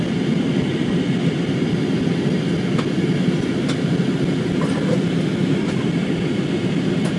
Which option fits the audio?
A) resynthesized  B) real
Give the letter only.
B